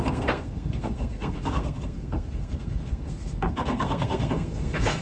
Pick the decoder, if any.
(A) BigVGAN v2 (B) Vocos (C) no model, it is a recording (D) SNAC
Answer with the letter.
D